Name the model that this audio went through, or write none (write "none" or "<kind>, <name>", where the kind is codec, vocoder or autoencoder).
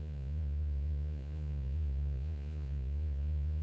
vocoder, Vocos